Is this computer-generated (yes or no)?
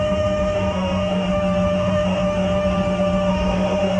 yes